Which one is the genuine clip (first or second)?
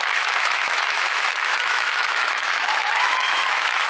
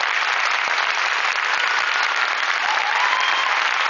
second